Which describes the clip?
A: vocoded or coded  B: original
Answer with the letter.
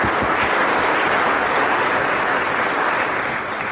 B